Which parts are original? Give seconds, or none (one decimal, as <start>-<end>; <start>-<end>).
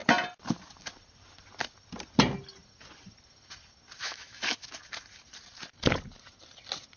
0.0-4.0; 4.7-7.0